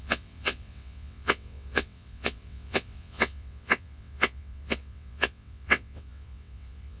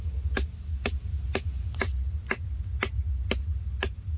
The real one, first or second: second